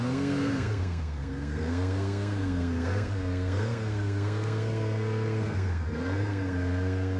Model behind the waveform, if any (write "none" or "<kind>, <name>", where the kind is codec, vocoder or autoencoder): codec, SNAC